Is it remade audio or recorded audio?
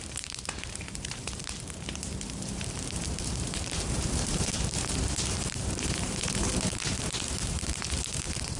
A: remade